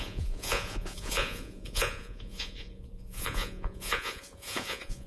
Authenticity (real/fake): fake